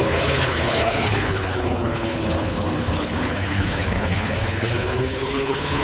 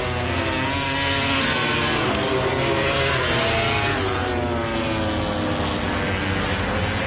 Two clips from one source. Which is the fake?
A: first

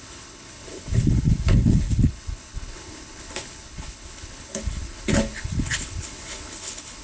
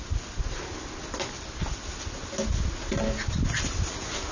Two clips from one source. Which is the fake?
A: first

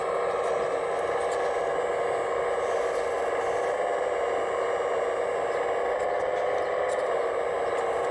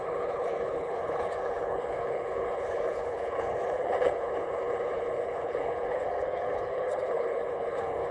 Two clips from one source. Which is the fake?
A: second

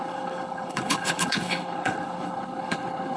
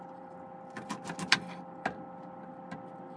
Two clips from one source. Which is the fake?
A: first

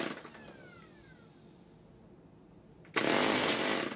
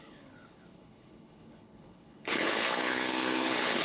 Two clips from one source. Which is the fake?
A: second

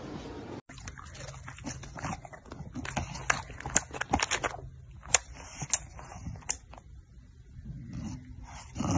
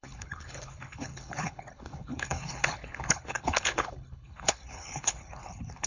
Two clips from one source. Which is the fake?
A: second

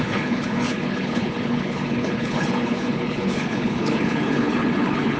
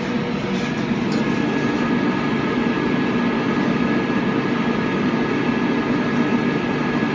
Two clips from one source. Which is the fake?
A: first